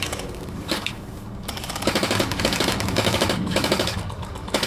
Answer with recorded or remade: remade